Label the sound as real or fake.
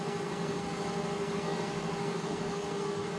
fake